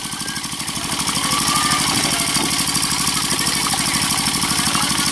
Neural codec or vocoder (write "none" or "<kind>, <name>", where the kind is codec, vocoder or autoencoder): none